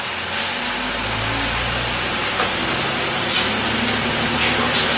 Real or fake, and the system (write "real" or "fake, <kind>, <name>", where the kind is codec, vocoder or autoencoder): real